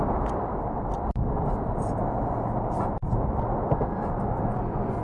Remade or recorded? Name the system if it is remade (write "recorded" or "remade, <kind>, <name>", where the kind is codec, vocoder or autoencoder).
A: remade, vocoder, BigVGAN v2